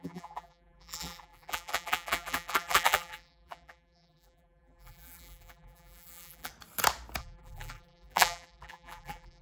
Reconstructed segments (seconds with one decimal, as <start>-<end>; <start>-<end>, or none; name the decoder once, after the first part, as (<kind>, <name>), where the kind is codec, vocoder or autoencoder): 0.0-6.5 (vocoder, BigVGAN v2); 7.2-9.4